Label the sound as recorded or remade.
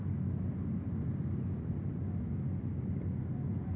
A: recorded